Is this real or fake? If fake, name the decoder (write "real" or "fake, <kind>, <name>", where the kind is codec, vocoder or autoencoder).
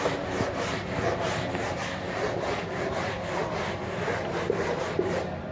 real